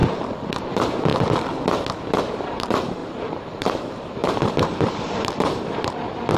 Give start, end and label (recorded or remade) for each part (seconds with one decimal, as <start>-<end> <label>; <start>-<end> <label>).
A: 0.0-0.6 recorded; 0.6-1.1 remade; 1.1-2.2 recorded; 2.2-6.4 remade